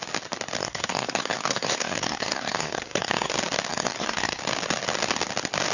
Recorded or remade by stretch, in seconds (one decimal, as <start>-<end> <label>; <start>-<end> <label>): 0.0-0.6 recorded; 0.6-3.3 remade; 3.3-3.7 recorded; 3.7-4.4 remade; 4.4-5.7 recorded